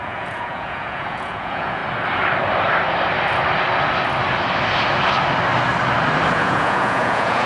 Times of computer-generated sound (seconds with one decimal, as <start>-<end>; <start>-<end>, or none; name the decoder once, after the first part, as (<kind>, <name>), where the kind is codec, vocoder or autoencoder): 0.0-1.8 (vocoder, Vocos); 6.3-7.5